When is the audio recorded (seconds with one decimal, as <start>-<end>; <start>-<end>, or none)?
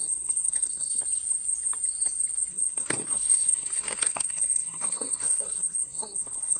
1.0-2.5